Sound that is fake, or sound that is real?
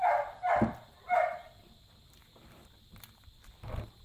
real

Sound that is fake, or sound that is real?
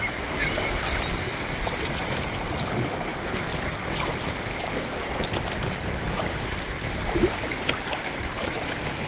real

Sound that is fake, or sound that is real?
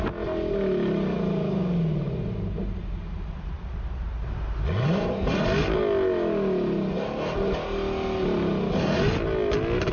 real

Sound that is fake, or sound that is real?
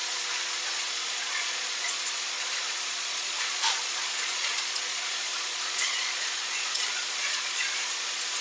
fake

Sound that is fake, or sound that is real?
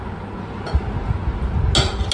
real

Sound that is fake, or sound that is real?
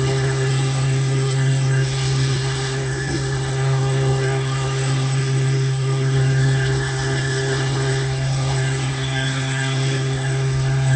fake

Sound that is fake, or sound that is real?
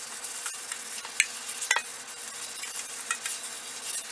real